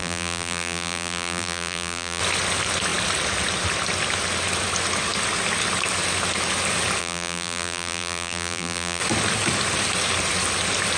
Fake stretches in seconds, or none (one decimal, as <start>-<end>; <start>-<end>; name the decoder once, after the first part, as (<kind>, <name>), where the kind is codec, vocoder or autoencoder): 0.0-2.2 (vocoder, BigVGAN v2); 7.0-9.0